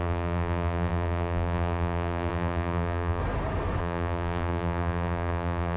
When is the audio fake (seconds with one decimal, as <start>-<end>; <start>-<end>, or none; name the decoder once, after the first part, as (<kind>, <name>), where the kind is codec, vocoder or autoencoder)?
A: 0.0-3.2 (vocoder, BigVGAN v2); 3.8-5.8